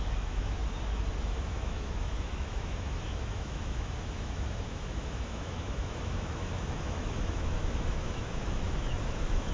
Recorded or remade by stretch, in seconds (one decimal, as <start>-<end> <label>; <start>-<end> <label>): 0.0-0.6 remade; 0.6-1.2 recorded; 1.2-9.5 remade